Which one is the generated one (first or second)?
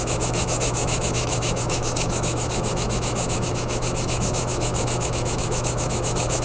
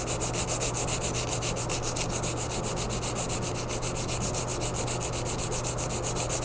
first